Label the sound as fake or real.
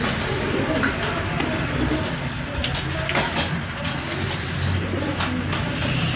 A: real